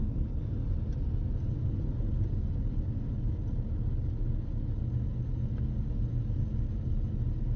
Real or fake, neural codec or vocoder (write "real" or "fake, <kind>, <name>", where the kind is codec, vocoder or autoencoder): real